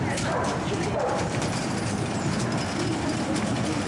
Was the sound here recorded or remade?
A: remade